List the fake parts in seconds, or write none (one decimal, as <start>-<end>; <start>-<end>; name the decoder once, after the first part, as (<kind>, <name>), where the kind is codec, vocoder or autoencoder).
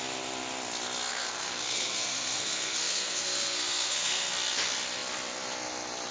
1.1-4.3 (codec, SNAC)